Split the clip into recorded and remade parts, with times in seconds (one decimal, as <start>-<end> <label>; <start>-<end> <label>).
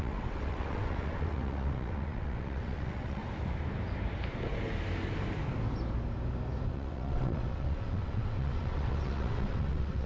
0.0-3.2 remade; 3.2-6.7 recorded; 6.7-10.1 remade